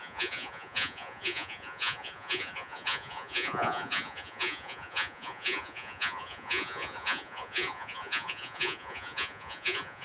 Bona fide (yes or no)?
no